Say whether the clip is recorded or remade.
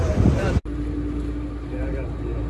recorded